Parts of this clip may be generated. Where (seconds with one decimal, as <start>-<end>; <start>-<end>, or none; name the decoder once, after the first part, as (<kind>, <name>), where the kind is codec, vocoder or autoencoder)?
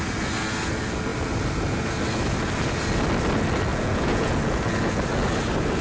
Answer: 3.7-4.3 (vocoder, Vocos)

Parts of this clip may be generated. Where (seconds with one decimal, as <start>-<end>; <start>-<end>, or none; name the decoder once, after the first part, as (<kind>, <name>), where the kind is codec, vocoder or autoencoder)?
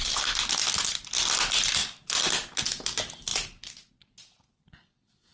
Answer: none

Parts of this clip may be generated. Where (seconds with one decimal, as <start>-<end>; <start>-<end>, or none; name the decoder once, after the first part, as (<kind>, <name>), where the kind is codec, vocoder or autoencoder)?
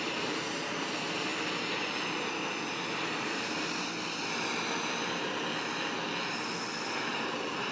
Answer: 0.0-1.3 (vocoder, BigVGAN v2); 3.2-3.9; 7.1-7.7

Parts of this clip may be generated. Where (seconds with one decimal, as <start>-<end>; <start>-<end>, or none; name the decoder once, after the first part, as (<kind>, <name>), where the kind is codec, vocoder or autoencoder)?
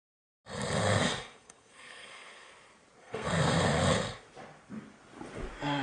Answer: 0.8-2.5 (codec, SNAC); 3.0-3.7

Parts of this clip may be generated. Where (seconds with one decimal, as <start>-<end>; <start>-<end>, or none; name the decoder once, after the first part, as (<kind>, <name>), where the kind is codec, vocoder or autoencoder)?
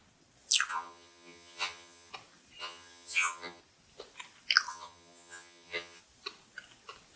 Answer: 0.7-2.1 (vocoder, HiFi-GAN); 2.6-3.6; 4.7-6.0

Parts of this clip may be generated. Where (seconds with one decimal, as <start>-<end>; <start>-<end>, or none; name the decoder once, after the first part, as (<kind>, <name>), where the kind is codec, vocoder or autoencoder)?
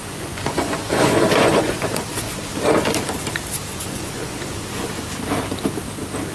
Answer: 0.0-2.4 (vocoder, Vocos); 3.7-4.9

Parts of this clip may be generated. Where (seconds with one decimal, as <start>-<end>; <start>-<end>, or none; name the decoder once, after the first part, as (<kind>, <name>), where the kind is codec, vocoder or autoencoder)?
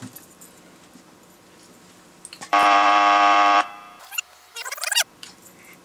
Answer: 2.5-5.8 (vocoder, BigVGAN v2)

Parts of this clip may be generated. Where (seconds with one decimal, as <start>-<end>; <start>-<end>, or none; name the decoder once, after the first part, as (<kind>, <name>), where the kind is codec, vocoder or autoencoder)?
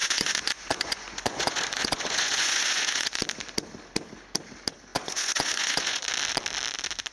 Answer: 0.0-3.2 (vocoder, Vocos); 4.9-6.1